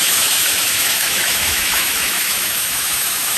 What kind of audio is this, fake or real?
fake